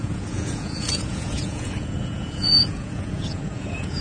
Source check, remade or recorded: remade